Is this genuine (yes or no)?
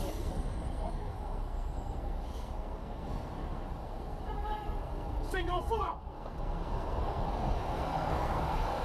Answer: no